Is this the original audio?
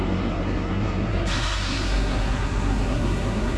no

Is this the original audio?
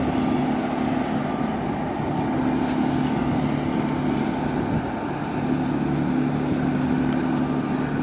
yes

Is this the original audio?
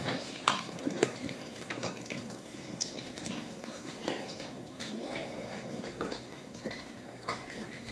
no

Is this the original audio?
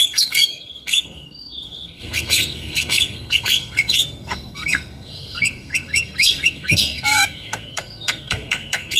no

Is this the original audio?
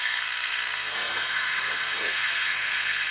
no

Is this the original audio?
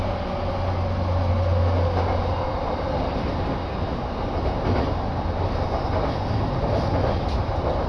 yes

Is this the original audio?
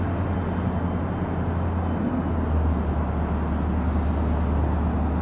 yes